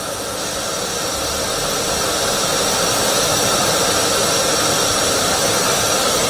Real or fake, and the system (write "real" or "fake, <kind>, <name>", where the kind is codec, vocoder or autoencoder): real